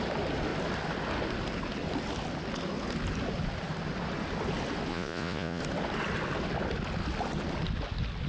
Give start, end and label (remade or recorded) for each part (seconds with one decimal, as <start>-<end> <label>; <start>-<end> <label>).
0.0-4.9 recorded; 4.9-5.6 remade; 5.6-8.3 recorded